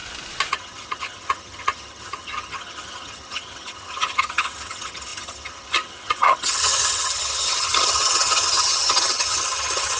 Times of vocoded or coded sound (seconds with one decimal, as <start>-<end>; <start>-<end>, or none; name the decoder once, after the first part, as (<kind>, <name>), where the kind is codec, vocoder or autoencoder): 0.5-10.0 (vocoder, HiFi-GAN)